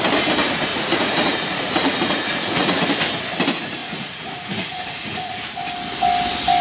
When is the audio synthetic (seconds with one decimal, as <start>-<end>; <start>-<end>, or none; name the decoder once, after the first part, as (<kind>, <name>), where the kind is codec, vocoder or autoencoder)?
0.7-2.8 (vocoder, Vocos); 3.8-5.4

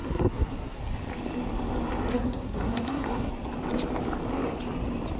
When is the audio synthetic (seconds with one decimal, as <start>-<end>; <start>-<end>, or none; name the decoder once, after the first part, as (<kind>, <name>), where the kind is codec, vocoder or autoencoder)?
0.0-0.8 (codec, SNAC); 2.1-3.3

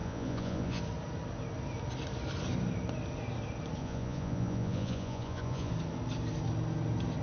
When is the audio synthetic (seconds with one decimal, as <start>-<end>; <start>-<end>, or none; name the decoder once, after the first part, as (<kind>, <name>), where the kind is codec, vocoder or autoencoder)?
0.0-0.8 (vocoder, Vocos); 3.8-5.7

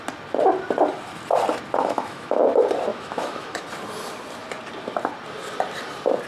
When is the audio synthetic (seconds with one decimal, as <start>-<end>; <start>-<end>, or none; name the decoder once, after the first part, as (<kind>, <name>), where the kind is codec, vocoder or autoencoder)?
1.8-2.4 (autoencoder, DAC-VAE); 2.9-3.6

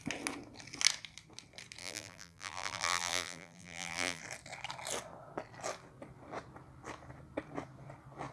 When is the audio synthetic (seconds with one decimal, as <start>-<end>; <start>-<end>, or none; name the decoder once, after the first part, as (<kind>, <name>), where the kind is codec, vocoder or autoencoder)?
1.8-4.2 (vocoder, BigVGAN v2)